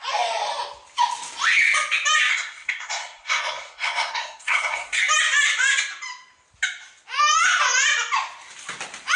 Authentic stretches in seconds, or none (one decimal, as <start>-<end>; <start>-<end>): 0.0-2.3; 5.0-9.2